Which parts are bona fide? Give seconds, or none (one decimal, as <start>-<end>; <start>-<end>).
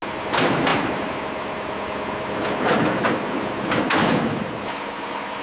0.0-5.4